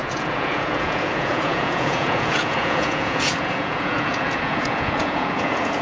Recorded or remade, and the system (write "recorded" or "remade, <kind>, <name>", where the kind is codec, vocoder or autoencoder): remade, vocoder, Vocos